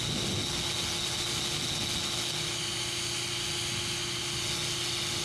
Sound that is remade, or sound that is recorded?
recorded